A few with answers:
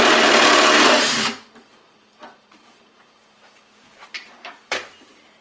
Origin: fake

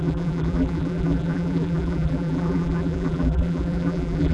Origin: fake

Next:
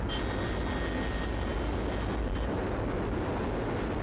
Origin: real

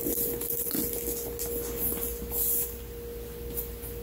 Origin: real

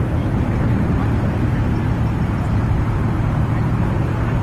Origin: fake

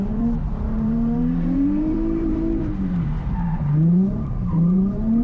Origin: fake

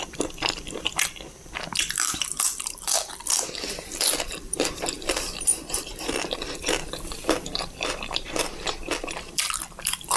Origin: fake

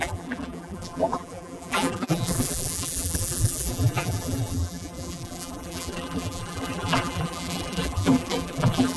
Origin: fake